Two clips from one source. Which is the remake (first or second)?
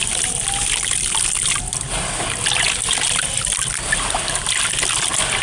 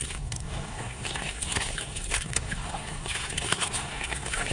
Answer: second